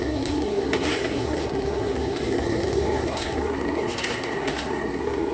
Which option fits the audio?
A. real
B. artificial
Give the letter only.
B